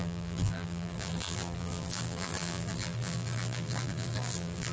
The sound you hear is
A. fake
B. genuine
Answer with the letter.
A